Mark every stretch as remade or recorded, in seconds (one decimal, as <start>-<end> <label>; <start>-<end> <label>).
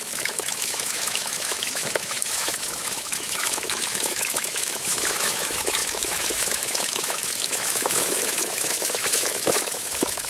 0.0-10.3 remade